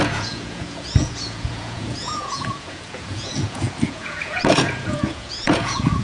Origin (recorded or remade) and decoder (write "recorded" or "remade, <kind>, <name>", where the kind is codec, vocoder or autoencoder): remade, vocoder, Vocos